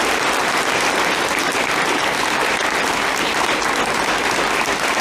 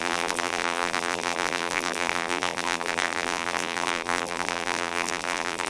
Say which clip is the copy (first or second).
second